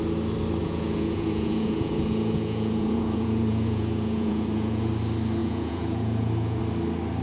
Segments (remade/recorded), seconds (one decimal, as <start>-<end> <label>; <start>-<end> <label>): 0.0-0.6 recorded; 0.6-4.9 remade; 4.9-5.4 recorded; 5.4-6.6 remade; 6.6-7.2 recorded